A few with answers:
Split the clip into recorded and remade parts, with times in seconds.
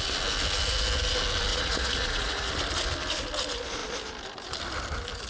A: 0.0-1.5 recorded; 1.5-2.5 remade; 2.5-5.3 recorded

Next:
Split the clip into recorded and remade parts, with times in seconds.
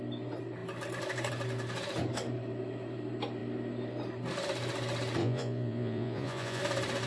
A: 0.0-5.2 recorded; 5.2-6.6 remade; 6.6-7.1 recorded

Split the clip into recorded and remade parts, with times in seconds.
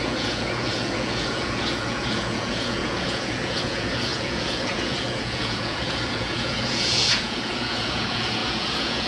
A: 0.0-9.1 remade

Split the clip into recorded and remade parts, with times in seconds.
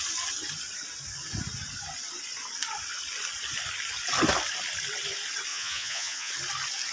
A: 0.0-5.5 recorded; 5.5-6.3 remade; 6.3-6.9 recorded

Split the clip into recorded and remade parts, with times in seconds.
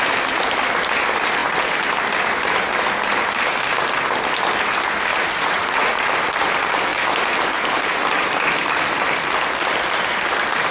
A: 0.0-5.1 recorded; 5.1-6.0 remade; 6.0-10.7 recorded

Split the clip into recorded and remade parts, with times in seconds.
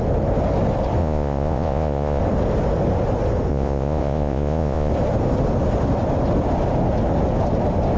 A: 0.0-1.0 recorded; 1.0-2.2 remade; 2.2-3.5 recorded; 3.5-4.9 remade; 4.9-8.0 recorded